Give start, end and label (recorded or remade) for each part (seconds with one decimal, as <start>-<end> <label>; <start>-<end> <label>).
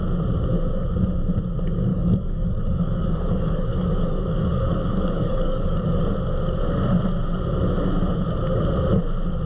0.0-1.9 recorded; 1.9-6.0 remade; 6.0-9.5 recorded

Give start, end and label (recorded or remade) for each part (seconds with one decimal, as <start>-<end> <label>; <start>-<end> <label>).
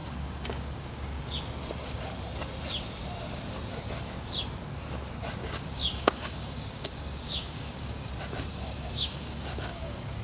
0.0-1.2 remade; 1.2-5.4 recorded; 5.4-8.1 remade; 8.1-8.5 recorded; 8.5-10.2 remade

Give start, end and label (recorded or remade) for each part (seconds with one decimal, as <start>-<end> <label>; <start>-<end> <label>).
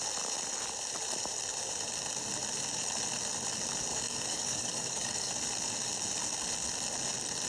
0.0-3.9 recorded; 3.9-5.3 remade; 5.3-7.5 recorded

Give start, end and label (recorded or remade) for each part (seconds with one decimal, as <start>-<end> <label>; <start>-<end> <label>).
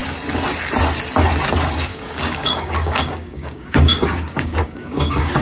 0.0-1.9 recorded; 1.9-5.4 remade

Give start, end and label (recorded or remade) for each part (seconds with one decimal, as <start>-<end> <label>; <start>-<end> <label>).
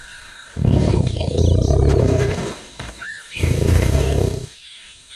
0.0-1.4 remade; 1.4-2.0 recorded; 2.0-5.2 remade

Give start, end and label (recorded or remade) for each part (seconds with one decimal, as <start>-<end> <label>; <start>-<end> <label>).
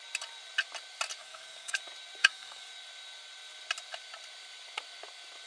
0.0-1.2 recorded; 1.2-1.8 remade; 1.8-2.2 recorded; 2.2-2.7 remade; 2.7-5.5 recorded